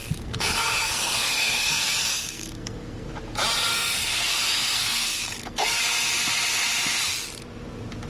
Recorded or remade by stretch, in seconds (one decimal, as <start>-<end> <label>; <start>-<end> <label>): 0.0-3.1 remade; 3.1-3.7 recorded; 3.7-5.8 remade; 5.8-8.1 recorded